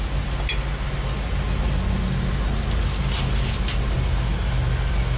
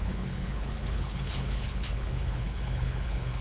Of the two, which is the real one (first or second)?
first